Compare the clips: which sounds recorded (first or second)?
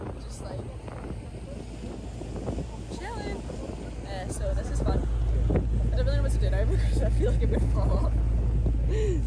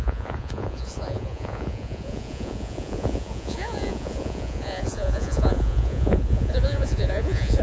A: first